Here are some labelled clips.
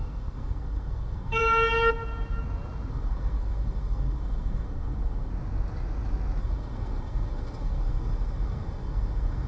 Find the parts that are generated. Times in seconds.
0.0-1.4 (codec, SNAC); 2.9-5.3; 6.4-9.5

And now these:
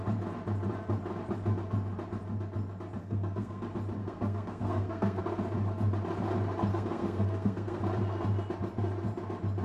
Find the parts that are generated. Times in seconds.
3.0-3.6 (codec, SNAC); 4.0-5.2; 6.7-7.8